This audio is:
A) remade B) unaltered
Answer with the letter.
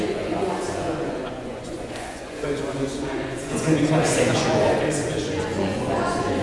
A